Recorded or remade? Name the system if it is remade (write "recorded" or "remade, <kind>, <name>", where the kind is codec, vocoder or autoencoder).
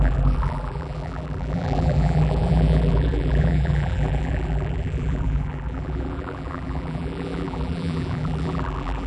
remade, vocoder, BigVGAN v2